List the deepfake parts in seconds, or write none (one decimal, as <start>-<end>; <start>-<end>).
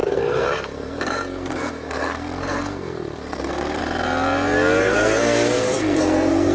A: 0.0-3.8; 4.8-6.5